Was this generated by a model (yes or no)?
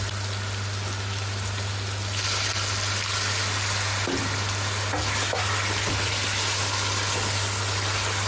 no